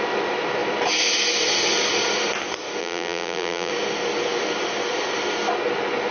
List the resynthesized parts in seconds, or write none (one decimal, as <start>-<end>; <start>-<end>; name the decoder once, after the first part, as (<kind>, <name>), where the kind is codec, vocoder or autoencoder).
2.8-3.7 (vocoder, BigVGAN v2)